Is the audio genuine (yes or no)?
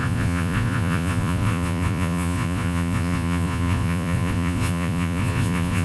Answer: no